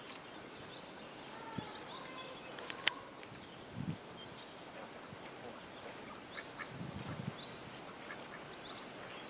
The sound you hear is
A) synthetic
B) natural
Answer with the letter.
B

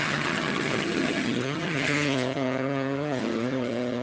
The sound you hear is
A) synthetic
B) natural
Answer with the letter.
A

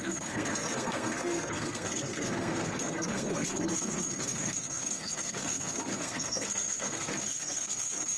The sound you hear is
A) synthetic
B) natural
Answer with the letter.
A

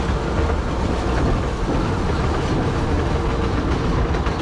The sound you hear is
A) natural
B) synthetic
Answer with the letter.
A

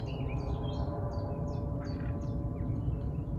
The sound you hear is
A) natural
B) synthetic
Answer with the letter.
A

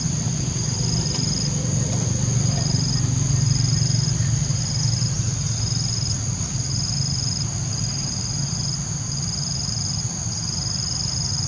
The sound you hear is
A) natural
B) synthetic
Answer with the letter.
A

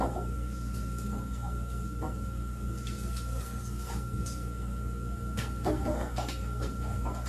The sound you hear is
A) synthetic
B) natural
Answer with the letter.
A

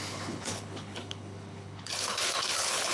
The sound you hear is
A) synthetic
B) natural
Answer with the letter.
A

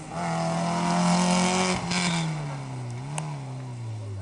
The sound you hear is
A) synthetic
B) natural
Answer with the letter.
B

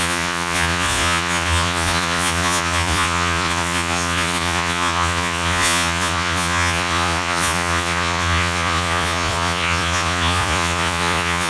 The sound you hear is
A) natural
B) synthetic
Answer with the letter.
B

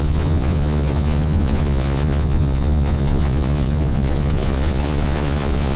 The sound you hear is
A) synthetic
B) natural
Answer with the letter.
A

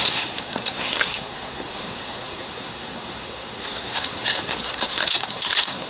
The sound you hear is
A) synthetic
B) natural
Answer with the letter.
A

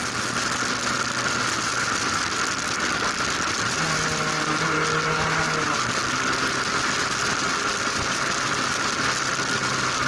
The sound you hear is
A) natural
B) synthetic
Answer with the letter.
A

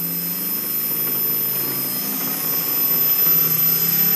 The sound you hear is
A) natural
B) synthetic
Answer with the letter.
A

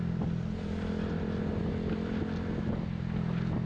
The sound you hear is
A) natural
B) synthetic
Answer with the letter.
A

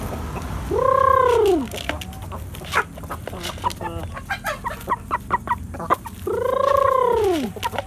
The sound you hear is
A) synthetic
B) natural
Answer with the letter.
B